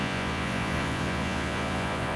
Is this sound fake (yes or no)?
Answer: yes